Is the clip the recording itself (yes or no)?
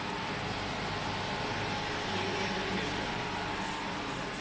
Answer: yes